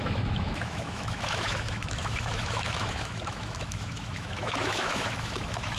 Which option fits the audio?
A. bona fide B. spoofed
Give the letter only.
B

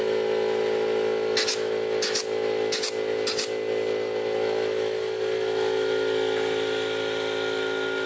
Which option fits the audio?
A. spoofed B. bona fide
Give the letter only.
B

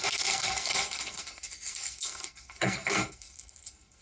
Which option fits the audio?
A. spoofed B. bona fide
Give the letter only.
A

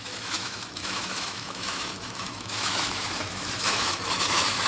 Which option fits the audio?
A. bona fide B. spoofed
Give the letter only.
B